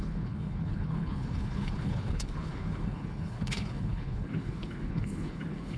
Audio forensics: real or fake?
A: fake